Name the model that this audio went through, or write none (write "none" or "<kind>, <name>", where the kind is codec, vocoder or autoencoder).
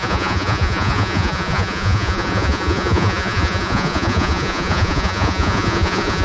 vocoder, Vocos